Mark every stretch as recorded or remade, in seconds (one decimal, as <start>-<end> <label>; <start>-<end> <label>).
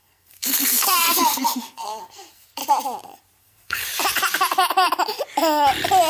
0.0-2.6 remade; 2.6-3.4 recorded; 3.4-3.8 remade; 3.8-6.1 recorded